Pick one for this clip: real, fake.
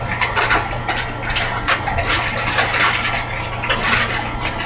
real